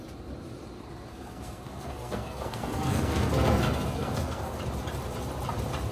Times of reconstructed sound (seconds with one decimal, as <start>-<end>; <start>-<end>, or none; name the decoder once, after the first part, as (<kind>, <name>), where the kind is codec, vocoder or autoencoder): 1.1-4.6 (codec, SNAC)